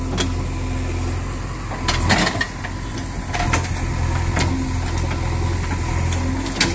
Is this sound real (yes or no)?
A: yes